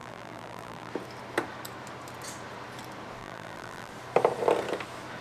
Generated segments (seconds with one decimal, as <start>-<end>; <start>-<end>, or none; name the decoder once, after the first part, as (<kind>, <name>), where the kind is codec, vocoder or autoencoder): 0.0-0.9 (vocoder, BigVGAN v2); 3.2-3.9